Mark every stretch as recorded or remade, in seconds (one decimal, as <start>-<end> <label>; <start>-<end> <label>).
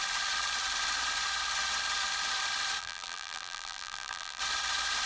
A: 0.0-2.8 recorded; 2.8-4.4 remade; 4.4-5.1 recorded